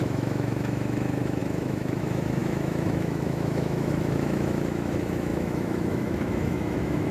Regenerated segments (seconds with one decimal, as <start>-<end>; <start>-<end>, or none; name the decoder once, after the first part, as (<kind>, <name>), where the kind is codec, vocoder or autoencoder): 0.0-7.1 (autoencoder, DAC-VAE)